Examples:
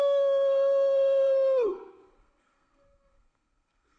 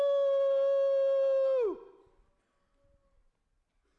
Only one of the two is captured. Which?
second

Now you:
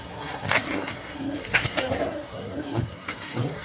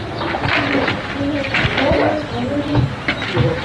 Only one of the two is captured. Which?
second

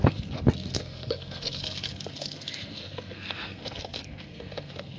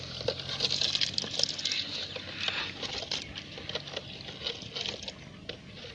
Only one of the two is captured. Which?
second